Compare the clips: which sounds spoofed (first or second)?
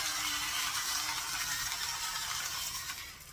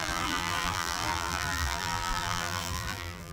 second